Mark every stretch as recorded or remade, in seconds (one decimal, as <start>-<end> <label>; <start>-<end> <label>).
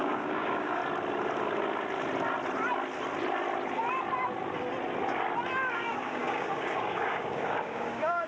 0.0-0.8 remade; 0.8-5.7 recorded; 5.7-8.3 remade